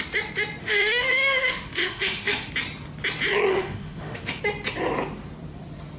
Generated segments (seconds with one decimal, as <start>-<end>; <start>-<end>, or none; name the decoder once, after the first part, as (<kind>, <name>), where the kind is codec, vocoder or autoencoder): 0.6-2.5 (autoencoder, DAC-VAE); 3.5-4.4